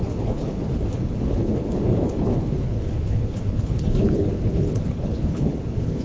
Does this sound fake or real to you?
fake